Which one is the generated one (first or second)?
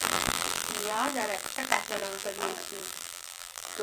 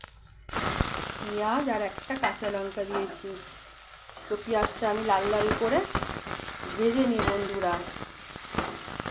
first